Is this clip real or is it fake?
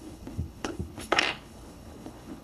fake